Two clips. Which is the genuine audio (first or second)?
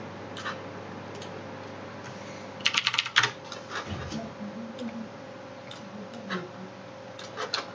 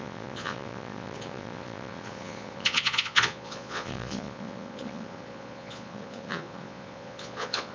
first